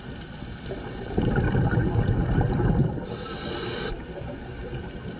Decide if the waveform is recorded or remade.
recorded